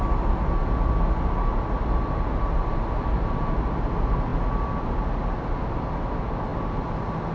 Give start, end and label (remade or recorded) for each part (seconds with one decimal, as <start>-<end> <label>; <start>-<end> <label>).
0.0-7.3 recorded